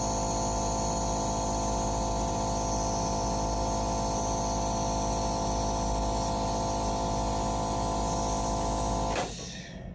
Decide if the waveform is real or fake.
real